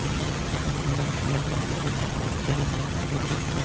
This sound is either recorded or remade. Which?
remade